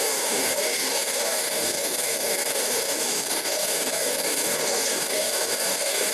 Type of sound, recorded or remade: remade